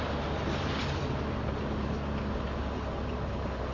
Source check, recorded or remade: recorded